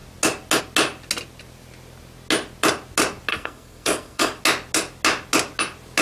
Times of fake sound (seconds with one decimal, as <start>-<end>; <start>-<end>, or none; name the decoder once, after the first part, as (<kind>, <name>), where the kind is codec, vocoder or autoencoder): 3.3-4.4 (codec, SNAC)

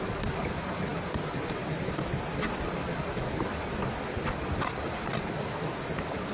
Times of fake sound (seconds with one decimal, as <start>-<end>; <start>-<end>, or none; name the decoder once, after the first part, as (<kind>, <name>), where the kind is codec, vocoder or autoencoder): none

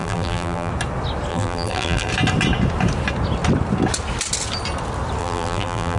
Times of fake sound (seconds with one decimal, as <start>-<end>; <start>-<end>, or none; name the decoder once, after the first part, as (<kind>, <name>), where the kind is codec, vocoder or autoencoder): 0.0-0.7 (vocoder, BigVGAN v2); 1.3-2.1; 5.2-6.0

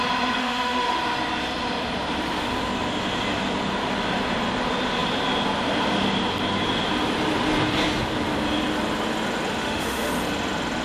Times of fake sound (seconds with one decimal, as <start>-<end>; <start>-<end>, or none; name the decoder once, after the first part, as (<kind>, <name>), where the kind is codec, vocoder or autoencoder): 0.4-1.0 (autoencoder, DAC-VAE); 9.6-10.1

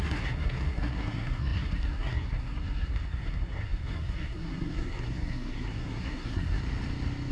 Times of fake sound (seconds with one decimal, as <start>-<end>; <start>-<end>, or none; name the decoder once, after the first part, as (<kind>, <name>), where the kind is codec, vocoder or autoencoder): 0.0-6.6 (codec, SNAC)

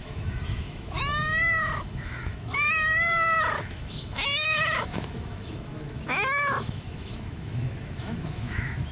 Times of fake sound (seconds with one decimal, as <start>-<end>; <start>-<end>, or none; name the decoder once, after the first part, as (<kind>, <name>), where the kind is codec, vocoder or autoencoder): 0.0-8.9 (autoencoder, DAC-VAE)

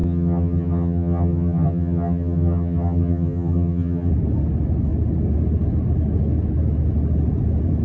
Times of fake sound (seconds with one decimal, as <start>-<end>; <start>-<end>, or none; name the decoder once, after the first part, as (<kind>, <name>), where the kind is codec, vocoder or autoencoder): 0.0-4.1 (vocoder, HiFi-GAN)